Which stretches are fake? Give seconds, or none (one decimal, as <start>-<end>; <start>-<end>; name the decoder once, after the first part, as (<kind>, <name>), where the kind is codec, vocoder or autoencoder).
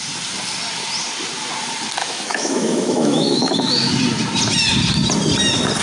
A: 2.0-3.9 (autoencoder, DAC-VAE)